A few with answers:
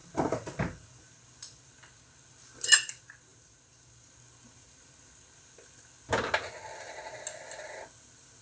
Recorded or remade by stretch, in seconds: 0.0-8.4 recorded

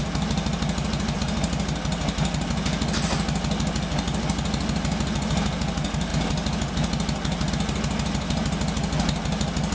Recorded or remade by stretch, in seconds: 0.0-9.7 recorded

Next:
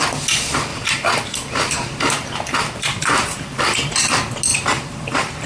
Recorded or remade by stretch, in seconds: 0.0-0.7 recorded; 0.7-4.0 remade; 4.0-4.5 recorded; 4.5-5.5 remade